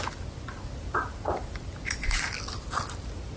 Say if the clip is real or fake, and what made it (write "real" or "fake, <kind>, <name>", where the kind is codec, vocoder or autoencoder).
real